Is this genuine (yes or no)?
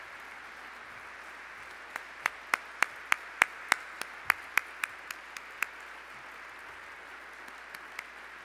yes